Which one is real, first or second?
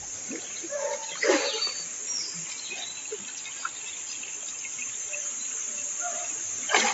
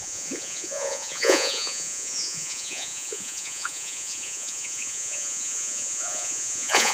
first